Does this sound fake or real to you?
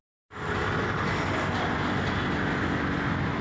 real